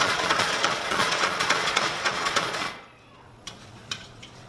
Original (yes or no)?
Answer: no